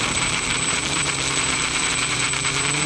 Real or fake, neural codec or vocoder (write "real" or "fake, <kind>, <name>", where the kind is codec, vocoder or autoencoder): fake, vocoder, BigVGAN v2